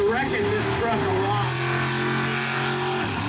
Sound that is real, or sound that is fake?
real